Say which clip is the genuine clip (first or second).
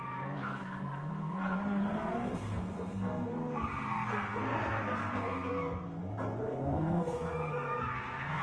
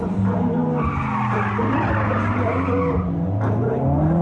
second